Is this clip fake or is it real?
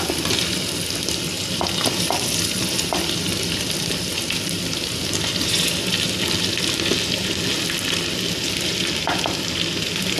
real